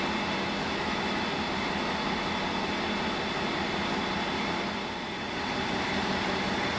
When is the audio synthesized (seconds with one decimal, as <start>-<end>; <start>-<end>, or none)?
0.6-1.2